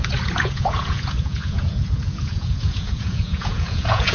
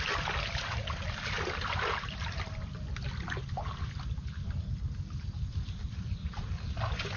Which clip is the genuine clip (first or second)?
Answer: second